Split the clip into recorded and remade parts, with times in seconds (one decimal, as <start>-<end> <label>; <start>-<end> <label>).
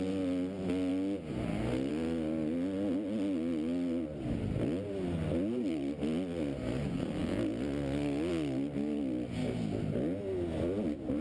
0.0-11.2 recorded